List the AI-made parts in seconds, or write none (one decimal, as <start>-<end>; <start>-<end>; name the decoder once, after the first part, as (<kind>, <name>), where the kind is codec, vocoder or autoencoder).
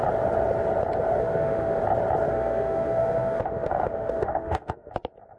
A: 1.2-1.8 (autoencoder, DAC-VAE); 2.3-4.9